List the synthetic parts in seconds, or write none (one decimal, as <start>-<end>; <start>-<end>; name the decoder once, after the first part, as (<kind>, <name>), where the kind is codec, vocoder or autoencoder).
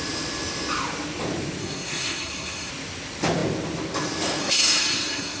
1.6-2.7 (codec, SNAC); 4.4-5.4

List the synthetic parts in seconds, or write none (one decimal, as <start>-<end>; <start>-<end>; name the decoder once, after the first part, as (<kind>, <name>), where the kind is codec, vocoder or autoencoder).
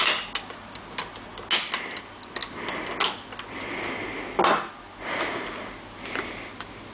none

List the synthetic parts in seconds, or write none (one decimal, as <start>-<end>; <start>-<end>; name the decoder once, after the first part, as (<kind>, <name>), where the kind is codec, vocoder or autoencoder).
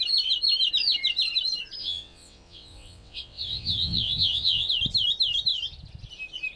1.8-4.7 (vocoder, WaveNeXt)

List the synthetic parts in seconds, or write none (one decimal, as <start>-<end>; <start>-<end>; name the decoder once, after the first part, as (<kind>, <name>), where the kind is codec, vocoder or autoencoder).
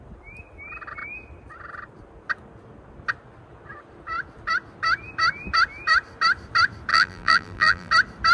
6.9-7.9 (vocoder, BigVGAN v2)